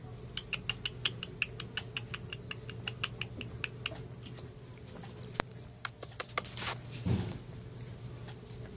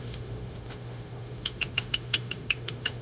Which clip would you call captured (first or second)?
first